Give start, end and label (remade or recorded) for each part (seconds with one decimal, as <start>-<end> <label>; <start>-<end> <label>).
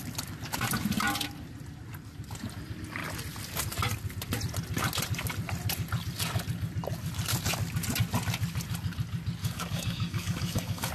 0.0-9.4 recorded; 9.4-10.9 remade